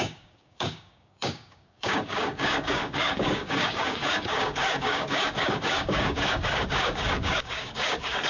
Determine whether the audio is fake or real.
fake